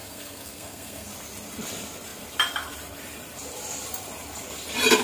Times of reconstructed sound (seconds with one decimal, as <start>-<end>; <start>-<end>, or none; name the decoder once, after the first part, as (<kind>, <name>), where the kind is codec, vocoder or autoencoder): 0.0-1.1 (codec, SNAC)